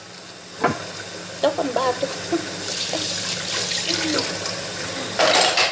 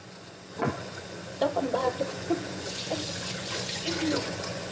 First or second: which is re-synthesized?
second